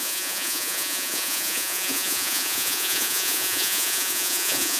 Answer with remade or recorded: remade